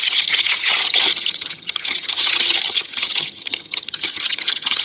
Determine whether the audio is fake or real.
fake